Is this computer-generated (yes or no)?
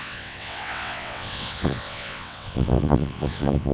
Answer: yes